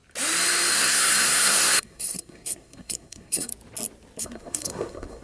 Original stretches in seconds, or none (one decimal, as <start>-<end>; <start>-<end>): 0.0-0.7; 3.5-4.2